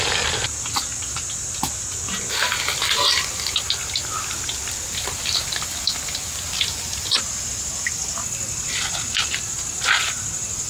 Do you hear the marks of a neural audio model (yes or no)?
no